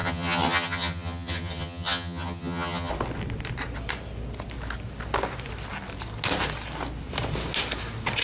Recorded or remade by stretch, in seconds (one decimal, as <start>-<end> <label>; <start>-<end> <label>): 0.0-2.9 remade; 2.9-8.2 recorded